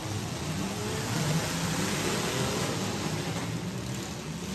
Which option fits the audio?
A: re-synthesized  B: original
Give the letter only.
B